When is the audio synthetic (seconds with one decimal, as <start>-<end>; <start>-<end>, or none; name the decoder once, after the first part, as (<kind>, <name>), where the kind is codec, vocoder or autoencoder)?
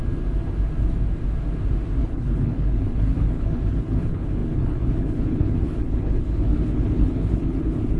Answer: 2.0-8.0 (codec, HILCodec)